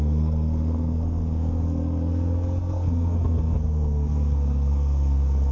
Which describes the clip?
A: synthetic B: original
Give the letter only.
A